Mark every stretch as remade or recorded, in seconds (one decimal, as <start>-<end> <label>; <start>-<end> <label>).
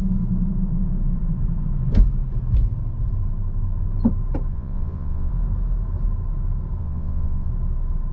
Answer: 0.0-4.5 recorded; 4.5-5.3 remade; 5.3-6.8 recorded; 6.8-7.5 remade; 7.5-8.1 recorded